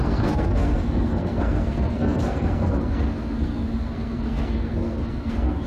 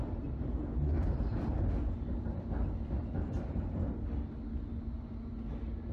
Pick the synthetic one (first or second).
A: first